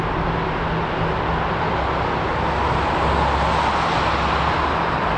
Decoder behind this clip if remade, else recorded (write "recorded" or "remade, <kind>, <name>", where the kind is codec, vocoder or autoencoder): recorded